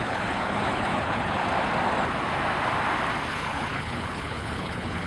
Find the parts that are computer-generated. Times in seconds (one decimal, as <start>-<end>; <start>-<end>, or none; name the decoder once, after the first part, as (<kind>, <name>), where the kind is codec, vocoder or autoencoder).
0.0-1.4 (codec, HILCodec); 3.3-5.1